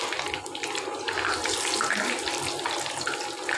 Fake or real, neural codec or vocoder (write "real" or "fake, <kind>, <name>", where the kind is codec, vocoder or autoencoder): real